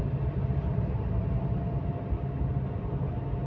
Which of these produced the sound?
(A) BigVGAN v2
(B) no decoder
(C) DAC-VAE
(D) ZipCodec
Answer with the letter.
B